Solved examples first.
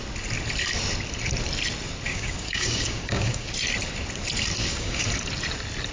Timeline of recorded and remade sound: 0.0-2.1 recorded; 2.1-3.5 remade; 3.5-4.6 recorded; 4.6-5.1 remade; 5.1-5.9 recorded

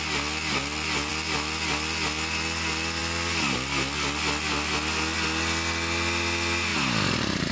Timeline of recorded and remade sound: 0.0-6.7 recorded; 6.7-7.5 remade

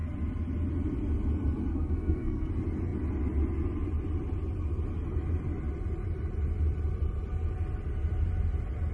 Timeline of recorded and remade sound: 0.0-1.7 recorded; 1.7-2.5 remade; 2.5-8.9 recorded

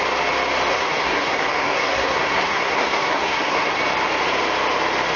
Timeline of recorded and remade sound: 0.0-0.7 recorded; 0.7-3.8 remade; 3.8-5.2 recorded

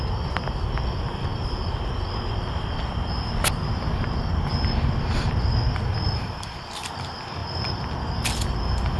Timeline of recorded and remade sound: 0.0-9.0 recorded

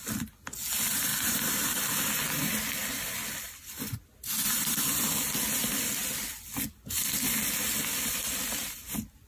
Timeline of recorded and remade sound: 0.0-9.3 recorded

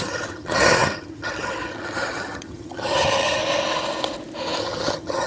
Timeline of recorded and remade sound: 0.0-3.4 remade; 3.4-4.6 recorded; 4.6-5.3 remade